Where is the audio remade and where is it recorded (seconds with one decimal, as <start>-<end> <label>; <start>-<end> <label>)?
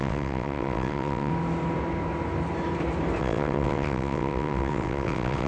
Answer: 0.0-1.3 remade; 1.3-3.2 recorded; 3.2-5.5 remade